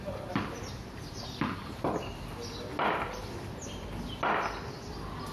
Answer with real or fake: real